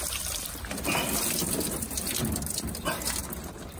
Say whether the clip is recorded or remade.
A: recorded